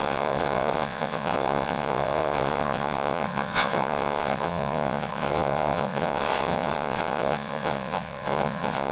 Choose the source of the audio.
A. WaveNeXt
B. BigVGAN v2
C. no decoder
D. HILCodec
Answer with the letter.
A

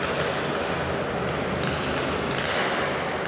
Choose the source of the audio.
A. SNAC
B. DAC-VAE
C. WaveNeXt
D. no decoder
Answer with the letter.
D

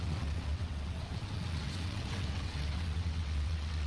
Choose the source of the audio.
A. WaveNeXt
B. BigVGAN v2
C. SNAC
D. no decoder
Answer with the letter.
A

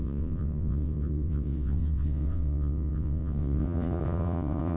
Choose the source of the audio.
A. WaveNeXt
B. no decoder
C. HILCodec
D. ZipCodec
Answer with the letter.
A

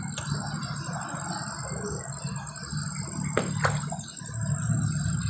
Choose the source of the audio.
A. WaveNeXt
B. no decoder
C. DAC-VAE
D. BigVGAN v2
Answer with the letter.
B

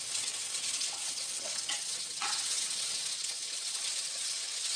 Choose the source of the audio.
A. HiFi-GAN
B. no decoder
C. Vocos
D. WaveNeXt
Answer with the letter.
D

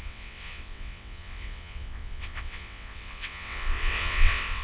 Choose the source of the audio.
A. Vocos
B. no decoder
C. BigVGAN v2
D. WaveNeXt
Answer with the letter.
D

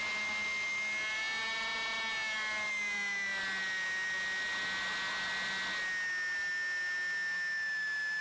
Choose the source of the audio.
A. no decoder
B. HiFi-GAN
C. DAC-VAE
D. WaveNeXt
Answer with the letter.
A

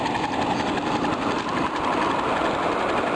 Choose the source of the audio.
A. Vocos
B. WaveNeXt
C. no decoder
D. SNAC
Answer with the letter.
C